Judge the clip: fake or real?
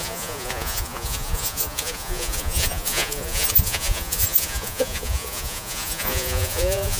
fake